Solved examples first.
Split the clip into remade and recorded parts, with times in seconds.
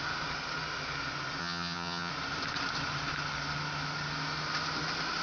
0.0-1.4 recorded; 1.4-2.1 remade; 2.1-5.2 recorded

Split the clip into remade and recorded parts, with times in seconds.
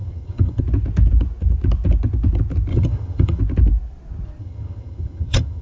0.0-0.6 remade; 0.6-2.7 recorded; 2.7-3.4 remade; 3.4-4.4 recorded; 4.4-5.6 remade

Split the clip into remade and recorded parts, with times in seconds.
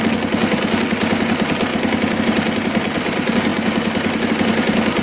0.0-5.0 recorded